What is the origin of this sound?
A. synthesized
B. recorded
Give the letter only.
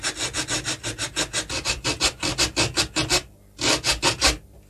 B